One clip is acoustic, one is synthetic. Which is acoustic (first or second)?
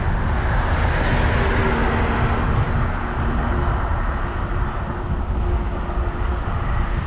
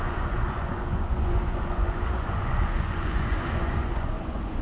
first